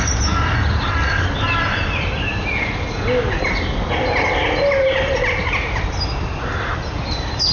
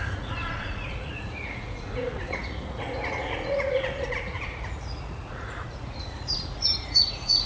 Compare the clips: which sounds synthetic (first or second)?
second